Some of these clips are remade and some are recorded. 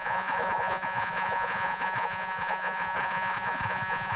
remade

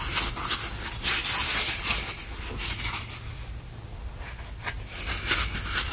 recorded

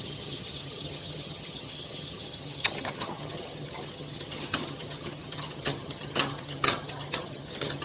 remade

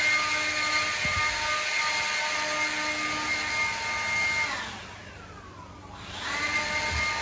recorded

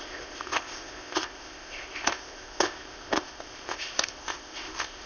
remade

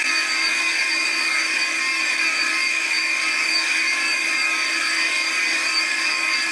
remade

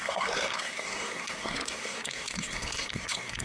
remade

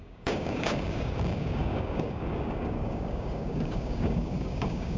remade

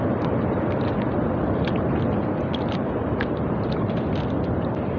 recorded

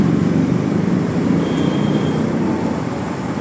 remade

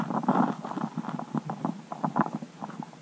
recorded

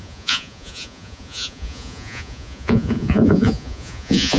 remade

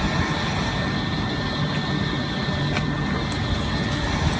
recorded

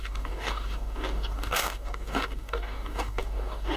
remade